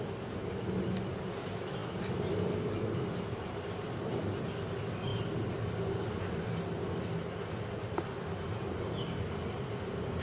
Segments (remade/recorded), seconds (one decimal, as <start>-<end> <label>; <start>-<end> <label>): 0.0-10.2 recorded